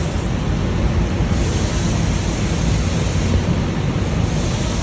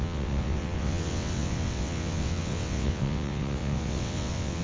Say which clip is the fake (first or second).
second